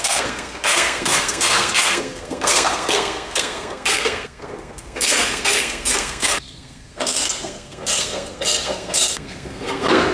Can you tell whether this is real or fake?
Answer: fake